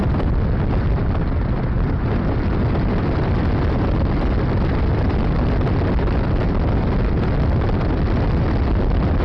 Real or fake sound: real